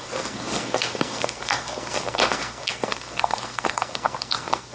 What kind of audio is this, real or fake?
fake